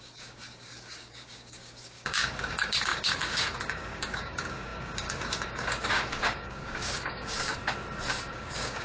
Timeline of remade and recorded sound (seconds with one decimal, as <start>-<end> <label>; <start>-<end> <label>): 0.0-7.6 remade; 7.6-8.3 recorded; 8.3-8.8 remade